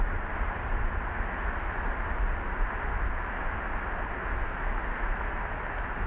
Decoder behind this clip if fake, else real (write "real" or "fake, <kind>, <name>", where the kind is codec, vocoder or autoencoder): real